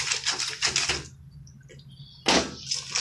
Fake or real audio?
real